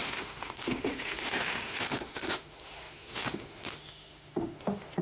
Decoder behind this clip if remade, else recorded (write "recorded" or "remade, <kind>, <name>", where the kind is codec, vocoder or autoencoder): remade, autoencoder, DAC-VAE